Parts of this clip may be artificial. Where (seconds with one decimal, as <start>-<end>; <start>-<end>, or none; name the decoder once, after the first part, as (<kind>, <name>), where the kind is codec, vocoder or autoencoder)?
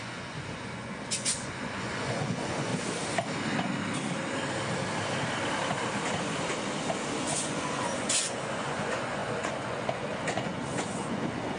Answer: 0.0-2.7 (vocoder, Vocos); 7.2-11.6